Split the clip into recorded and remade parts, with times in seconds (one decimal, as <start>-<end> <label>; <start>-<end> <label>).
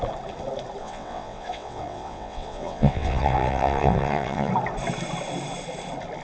0.0-0.8 recorded; 0.8-4.5 remade; 4.5-6.2 recorded